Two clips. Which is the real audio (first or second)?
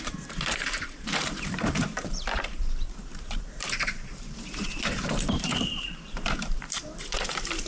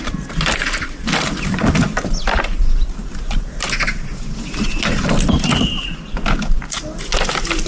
second